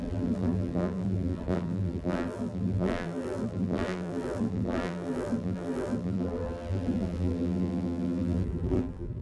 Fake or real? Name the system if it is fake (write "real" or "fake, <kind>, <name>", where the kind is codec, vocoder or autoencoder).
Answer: fake, vocoder, BigVGAN v2